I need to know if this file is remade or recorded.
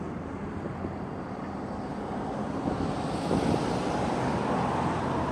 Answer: recorded